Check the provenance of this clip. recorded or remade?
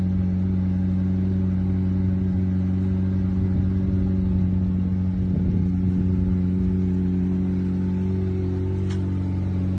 recorded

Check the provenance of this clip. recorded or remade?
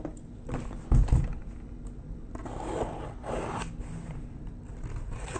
recorded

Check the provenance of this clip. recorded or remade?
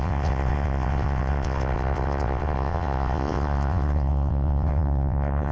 remade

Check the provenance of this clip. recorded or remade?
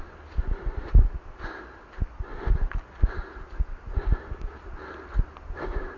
recorded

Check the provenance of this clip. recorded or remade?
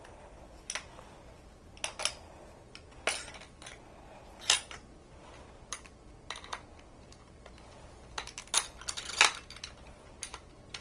recorded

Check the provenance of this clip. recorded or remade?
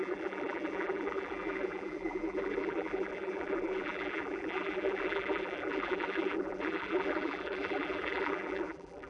remade